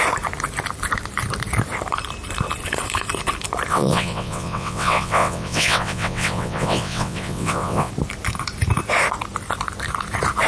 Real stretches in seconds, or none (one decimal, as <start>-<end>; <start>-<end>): 0.0-3.7; 7.9-10.5